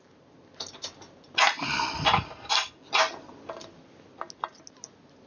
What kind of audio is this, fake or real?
real